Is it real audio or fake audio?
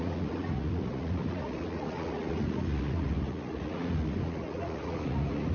fake